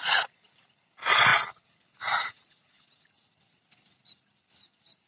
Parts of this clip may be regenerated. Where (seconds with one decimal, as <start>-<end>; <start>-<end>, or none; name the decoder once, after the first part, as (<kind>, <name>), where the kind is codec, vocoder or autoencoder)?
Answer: 1.3-3.0 (vocoder, BigVGAN v2)